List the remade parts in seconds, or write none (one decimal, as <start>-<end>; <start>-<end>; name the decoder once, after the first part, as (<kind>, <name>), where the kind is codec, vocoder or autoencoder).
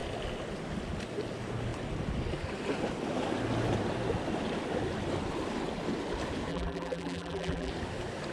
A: 6.5-7.7 (vocoder, BigVGAN v2)